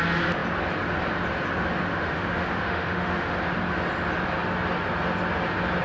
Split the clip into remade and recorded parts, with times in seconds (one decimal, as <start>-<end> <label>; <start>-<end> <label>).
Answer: 0.0-1.9 recorded; 1.9-3.4 remade; 3.4-5.8 recorded